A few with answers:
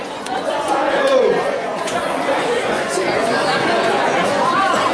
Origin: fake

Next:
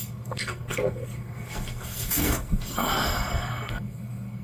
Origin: fake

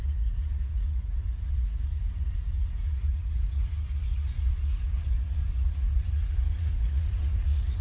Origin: fake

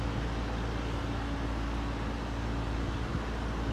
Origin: real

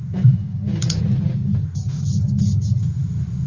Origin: real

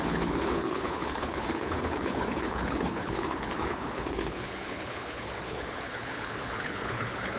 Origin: fake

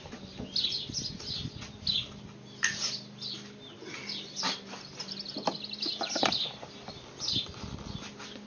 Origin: real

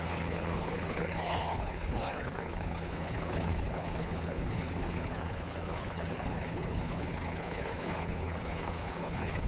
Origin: fake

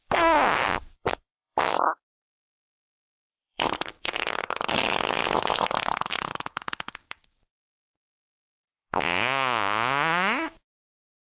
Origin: fake